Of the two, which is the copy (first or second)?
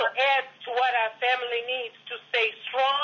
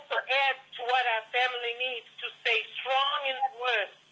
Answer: second